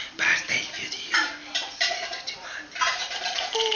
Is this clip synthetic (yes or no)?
no